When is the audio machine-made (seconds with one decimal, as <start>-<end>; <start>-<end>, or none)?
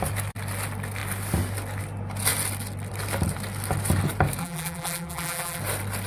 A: 4.4-5.6